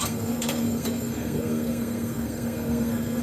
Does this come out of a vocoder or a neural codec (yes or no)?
yes